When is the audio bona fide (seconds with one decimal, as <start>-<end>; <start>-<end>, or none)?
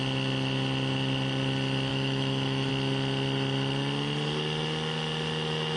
0.0-1.9; 2.7-5.8